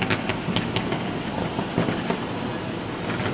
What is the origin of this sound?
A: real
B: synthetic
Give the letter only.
A